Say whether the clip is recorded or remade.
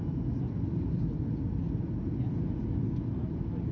recorded